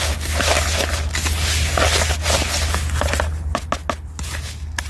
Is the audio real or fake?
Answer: real